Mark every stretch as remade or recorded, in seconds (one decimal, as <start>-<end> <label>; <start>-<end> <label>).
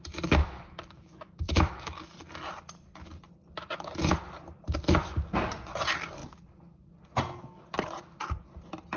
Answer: 0.0-0.4 recorded; 0.4-2.0 remade; 2.0-9.0 recorded